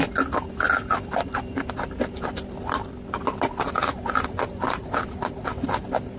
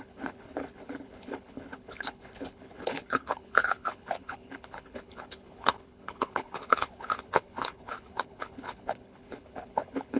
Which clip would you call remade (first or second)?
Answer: second